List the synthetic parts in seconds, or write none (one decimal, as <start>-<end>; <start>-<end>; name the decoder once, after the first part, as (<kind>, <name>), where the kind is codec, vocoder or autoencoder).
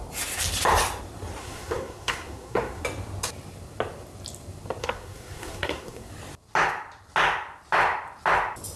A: 1.4-2.8 (codec, SNAC); 4.8-6.1